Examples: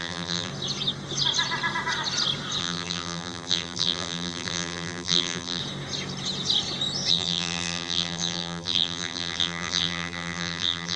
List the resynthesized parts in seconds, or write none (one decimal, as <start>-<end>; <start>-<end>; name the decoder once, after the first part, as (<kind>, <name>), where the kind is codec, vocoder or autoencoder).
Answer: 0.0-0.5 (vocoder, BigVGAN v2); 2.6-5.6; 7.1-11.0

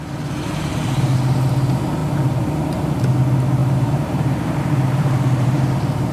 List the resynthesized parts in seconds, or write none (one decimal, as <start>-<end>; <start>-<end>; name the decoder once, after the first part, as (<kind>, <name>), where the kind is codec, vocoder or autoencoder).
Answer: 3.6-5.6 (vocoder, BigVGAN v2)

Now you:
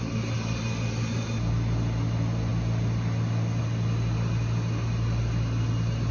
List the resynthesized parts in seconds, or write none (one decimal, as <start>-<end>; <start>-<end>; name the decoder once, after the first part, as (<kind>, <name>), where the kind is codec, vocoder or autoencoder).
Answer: none

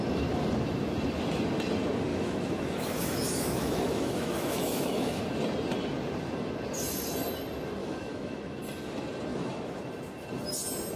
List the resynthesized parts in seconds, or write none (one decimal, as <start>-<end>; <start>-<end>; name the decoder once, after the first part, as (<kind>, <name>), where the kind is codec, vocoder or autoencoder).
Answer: 2.1-5.2 (autoencoder, DAC-VAE); 7.8-8.6; 9.3-9.8

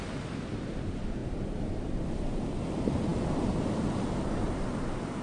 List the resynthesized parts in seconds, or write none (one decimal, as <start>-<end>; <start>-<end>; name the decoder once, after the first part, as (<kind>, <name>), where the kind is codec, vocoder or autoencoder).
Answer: none

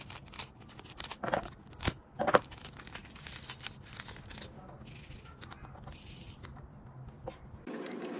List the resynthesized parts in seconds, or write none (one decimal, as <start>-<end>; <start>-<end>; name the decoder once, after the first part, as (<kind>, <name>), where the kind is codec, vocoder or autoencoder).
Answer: none